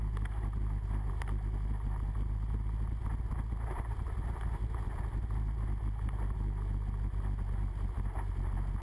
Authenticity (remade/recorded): recorded